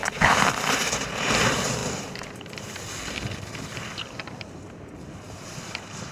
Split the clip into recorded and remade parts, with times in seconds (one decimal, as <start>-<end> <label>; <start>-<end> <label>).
0.0-3.7 remade; 3.7-4.9 recorded; 4.9-6.1 remade